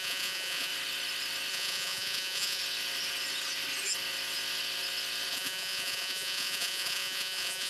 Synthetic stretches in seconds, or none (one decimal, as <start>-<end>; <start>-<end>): 0.0-0.7; 1.5-2.6; 5.3-7.7